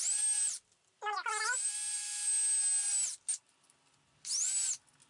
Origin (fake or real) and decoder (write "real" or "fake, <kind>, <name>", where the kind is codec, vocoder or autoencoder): real